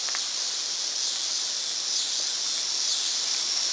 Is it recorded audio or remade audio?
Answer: remade